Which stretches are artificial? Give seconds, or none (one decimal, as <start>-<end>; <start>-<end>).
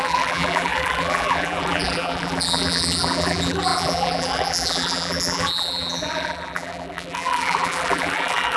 0.0-8.6